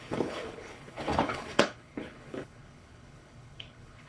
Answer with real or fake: fake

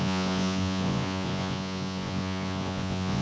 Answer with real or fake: fake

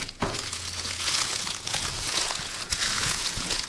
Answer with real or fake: fake